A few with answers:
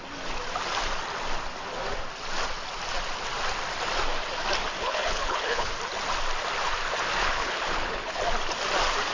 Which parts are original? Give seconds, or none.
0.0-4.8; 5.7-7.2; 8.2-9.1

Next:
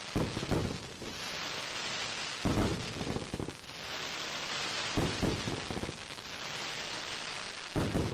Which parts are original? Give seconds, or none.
0.0-8.1

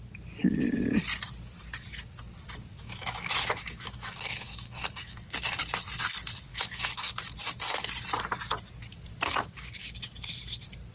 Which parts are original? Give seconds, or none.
0.0-2.7; 5.6-6.5; 7.1-10.9

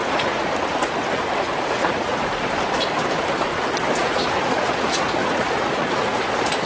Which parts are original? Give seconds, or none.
0.5-1.5; 2.3-4.0; 6.2-6.7

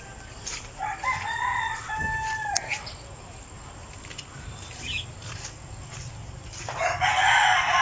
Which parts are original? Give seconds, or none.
0.0-7.8

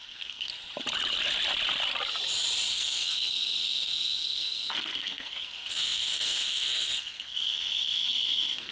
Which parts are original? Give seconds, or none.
0.5-2.7

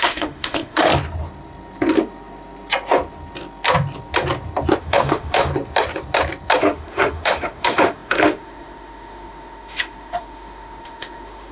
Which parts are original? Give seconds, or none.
0.9-4.8; 5.5-6.6

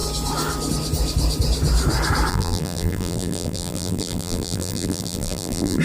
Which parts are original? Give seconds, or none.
0.0-2.3